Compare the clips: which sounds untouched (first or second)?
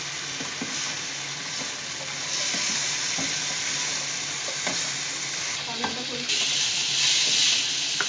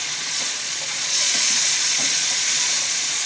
first